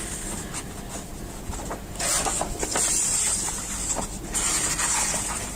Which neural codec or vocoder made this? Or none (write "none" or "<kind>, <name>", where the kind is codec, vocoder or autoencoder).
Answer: none